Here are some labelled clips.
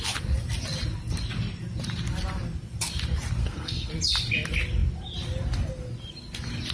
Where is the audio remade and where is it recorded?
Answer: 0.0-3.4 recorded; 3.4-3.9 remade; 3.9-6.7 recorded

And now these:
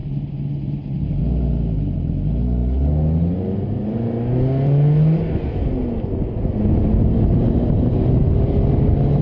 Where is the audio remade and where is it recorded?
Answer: 0.0-9.2 recorded

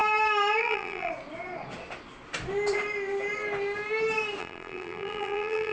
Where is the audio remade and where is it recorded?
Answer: 0.0-0.6 recorded; 0.6-1.1 remade; 1.1-4.4 recorded; 4.4-5.7 remade

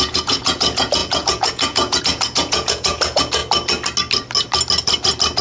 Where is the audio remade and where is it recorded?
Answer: 0.0-3.4 remade; 3.4-5.4 recorded

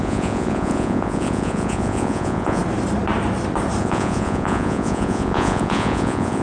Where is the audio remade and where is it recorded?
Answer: 0.0-2.6 remade; 2.6-3.8 recorded; 3.8-6.4 remade